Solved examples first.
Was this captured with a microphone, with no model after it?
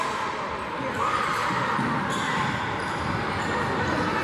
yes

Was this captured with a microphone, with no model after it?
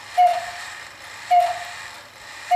no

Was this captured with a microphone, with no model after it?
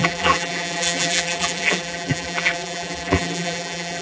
no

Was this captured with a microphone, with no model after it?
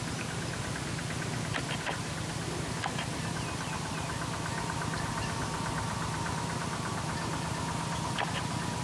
no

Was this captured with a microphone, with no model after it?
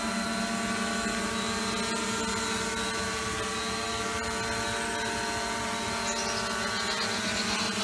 yes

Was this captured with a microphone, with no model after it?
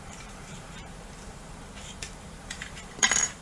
no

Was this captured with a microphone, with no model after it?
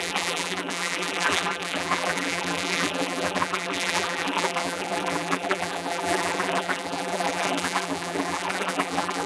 no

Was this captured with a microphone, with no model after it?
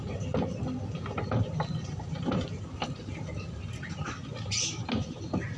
yes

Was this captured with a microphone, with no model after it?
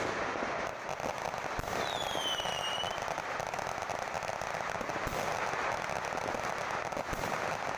yes